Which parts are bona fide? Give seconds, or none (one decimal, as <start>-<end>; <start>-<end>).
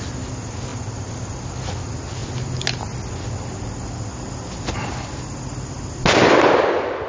0.0-7.1